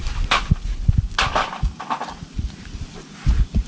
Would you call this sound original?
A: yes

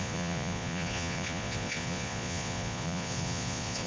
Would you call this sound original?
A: no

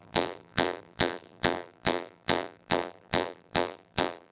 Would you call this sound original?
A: no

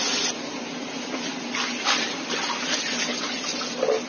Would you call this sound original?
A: yes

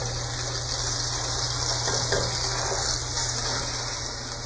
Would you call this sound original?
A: yes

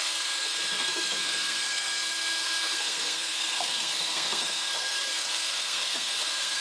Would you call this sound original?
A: no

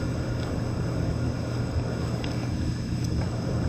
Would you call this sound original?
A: no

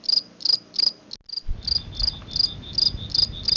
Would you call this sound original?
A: yes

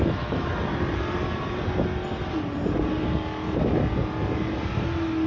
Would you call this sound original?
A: yes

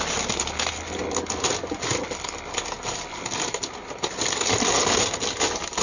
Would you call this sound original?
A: yes